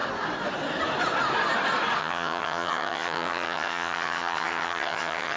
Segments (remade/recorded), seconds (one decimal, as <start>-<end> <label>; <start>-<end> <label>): 0.0-2.0 recorded; 2.0-5.4 remade

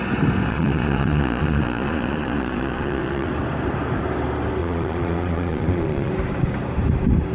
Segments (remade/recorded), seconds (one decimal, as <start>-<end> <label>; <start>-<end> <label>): 0.0-0.5 recorded; 0.5-3.3 remade; 3.3-4.6 recorded; 4.6-6.1 remade; 6.1-7.3 recorded

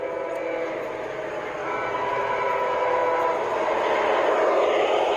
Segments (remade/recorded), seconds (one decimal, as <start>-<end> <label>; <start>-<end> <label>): 0.0-1.6 recorded; 1.6-2.5 remade; 2.5-5.2 recorded

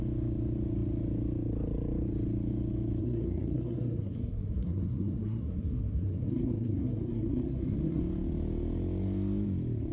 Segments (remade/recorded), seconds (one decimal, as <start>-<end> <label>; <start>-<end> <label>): 0.0-3.0 recorded; 3.0-8.0 remade; 8.0-9.9 recorded

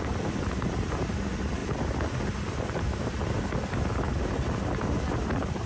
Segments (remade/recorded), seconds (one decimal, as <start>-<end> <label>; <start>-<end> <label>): 0.0-5.7 recorded